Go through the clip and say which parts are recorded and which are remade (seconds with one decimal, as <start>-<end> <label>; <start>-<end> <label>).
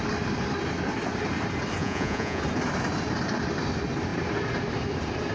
0.0-1.8 recorded; 1.8-2.4 remade; 2.4-5.3 recorded